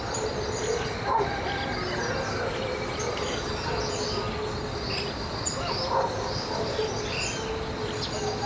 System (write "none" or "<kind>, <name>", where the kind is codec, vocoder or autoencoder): none